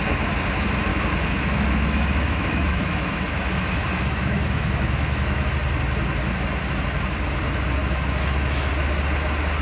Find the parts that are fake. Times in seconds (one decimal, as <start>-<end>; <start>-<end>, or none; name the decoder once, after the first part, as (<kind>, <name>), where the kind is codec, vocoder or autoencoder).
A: 0.9-5.5 (autoencoder, DAC-VAE); 7.8-8.7